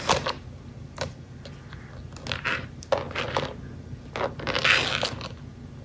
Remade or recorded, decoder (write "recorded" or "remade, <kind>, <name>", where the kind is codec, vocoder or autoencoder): recorded